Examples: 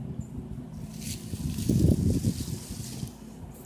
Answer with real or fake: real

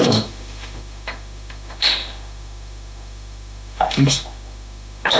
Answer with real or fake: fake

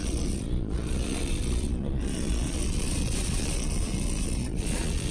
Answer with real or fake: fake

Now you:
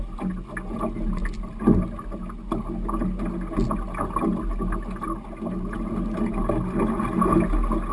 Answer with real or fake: real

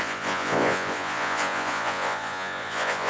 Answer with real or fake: fake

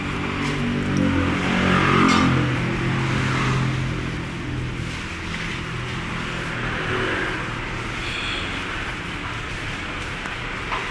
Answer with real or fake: real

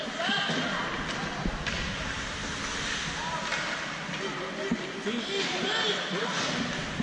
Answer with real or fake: real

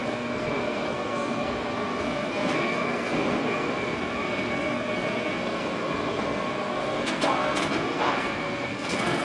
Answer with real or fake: fake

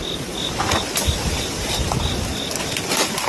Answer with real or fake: real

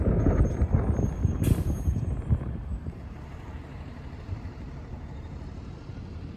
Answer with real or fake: fake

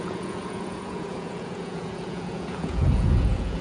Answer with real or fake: fake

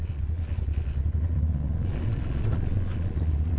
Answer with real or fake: fake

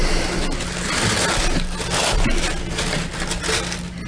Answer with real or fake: real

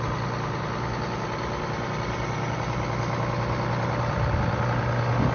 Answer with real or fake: real